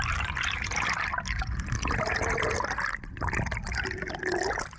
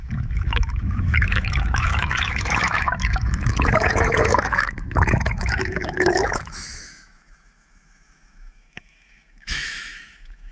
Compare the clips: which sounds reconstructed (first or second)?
second